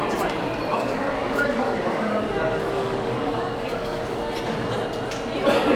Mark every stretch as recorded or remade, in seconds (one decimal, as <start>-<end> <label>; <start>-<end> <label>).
0.0-0.7 recorded; 0.7-4.2 remade; 4.2-5.8 recorded